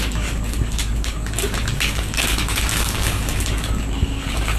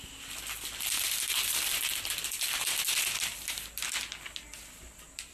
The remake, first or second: first